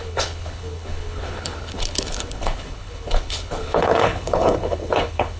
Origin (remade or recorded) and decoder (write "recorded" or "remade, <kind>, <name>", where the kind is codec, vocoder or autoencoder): remade, codec, HILCodec